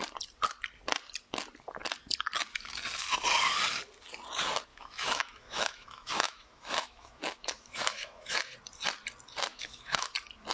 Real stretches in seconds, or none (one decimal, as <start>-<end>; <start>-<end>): 0.0-4.7; 8.4-9.5; 10.1-10.5